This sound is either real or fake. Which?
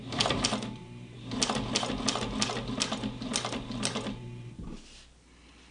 real